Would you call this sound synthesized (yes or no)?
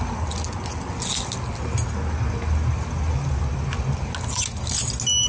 no